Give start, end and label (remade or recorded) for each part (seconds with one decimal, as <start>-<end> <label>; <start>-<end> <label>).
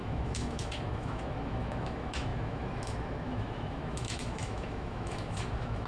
0.0-5.9 remade